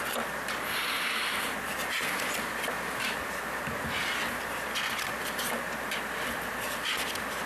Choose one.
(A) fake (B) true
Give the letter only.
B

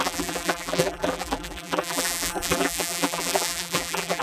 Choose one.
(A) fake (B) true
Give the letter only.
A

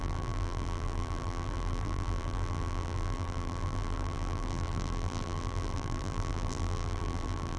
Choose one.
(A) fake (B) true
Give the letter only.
A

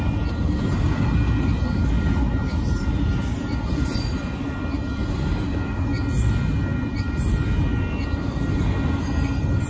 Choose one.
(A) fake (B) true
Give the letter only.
B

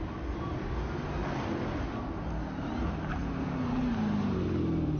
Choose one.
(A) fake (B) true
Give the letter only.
B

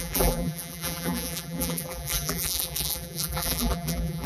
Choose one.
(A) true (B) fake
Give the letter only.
B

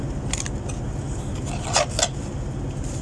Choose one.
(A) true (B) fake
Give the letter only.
A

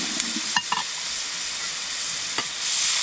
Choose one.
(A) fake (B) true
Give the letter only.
B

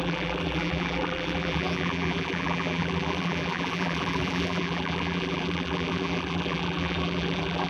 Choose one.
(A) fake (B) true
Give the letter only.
A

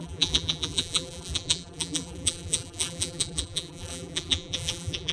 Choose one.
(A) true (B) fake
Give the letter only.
B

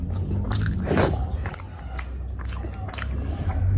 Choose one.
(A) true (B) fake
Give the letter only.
A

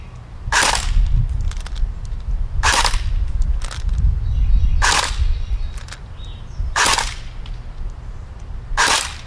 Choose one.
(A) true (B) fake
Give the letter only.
A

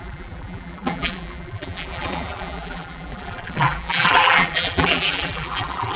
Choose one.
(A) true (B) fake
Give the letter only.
B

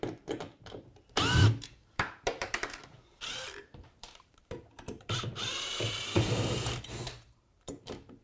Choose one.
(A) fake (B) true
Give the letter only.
A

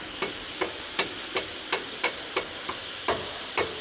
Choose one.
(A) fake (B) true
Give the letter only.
A